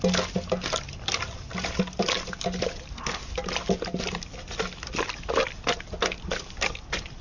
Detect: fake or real real